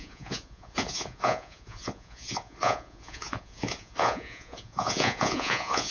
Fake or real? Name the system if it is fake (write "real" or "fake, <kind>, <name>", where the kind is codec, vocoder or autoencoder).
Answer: fake, vocoder, Vocos